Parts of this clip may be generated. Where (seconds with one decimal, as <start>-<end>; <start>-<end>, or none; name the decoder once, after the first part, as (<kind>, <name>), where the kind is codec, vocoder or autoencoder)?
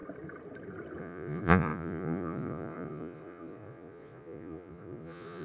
1.0-5.4 (vocoder, Vocos)